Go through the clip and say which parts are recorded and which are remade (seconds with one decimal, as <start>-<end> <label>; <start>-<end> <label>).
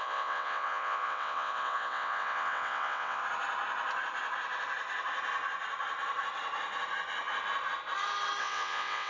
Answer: 0.0-3.2 remade; 3.2-8.4 recorded; 8.4-9.1 remade